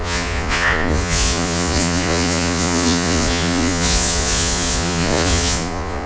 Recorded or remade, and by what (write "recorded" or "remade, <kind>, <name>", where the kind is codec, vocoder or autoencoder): remade, vocoder, Vocos